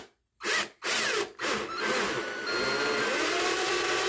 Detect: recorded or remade recorded